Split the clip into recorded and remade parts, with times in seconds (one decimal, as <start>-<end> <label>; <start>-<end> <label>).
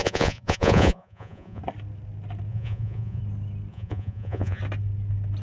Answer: 0.0-1.6 remade; 1.6-2.5 recorded; 2.5-3.2 remade; 3.2-3.7 recorded; 3.7-4.6 remade; 4.6-5.4 recorded